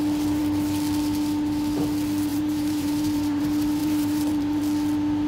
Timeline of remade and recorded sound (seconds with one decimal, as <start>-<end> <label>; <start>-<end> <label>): 0.0-2.3 recorded; 2.3-3.4 remade; 3.4-3.8 recorded; 3.8-4.6 remade; 4.6-5.3 recorded